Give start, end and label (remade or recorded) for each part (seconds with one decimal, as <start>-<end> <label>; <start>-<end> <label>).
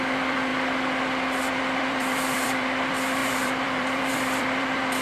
0.0-0.5 remade; 0.5-1.5 recorded; 1.5-5.0 remade